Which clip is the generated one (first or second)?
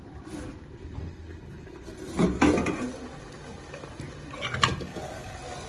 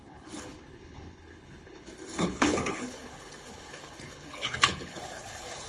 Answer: second